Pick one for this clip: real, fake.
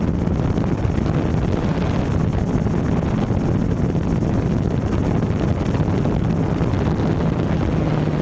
real